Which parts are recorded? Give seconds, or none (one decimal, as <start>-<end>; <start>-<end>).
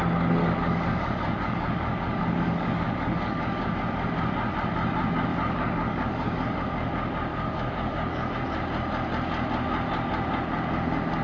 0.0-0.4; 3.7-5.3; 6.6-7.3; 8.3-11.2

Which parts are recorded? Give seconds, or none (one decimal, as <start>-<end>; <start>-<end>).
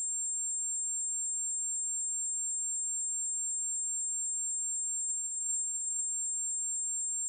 0.0-5.1; 6.0-7.3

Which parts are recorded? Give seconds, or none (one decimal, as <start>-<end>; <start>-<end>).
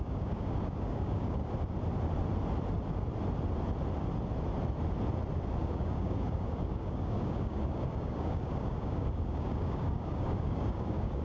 1.4-5.6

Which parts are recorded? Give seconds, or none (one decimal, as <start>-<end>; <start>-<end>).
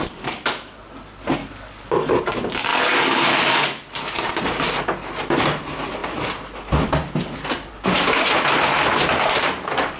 0.0-1.4; 2.2-10.0